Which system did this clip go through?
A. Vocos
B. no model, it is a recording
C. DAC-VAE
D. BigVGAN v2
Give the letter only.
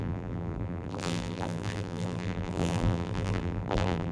D